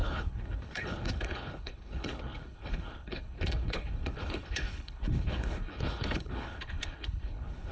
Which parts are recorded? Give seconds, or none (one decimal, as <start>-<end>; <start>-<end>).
none